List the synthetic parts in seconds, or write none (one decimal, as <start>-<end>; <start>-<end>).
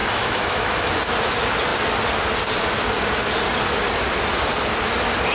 0.0-0.9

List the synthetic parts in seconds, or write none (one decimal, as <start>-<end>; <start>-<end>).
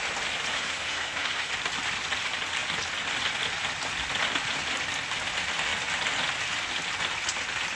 0.5-1.5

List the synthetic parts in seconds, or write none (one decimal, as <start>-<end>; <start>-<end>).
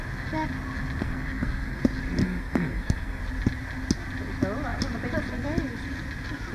1.0-1.8; 2.2-3.2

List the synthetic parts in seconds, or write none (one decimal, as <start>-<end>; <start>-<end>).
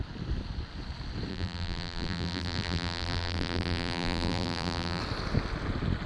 1.3-5.0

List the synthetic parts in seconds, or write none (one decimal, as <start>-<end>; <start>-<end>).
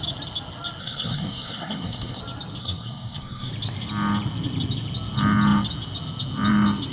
0.8-2.2; 2.6-3.5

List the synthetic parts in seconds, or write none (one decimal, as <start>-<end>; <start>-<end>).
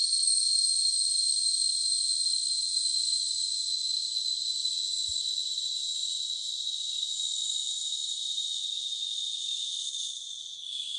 6.0-6.5; 8.0-8.6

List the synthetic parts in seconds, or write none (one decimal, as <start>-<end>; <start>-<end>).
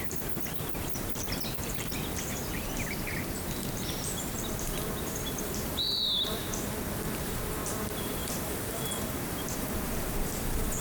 0.0-6.4; 7.2-10.8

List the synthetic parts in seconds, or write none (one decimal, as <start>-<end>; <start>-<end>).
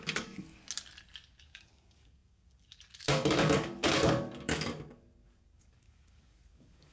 0.0-0.6; 1.4-6.9